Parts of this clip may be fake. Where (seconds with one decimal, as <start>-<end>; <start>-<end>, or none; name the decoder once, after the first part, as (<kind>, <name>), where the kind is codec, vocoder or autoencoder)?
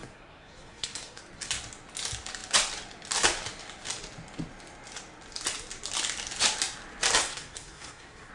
0.0-1.2 (codec, SNAC); 7.2-8.3